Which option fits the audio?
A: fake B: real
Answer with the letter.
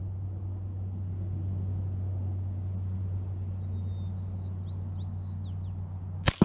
B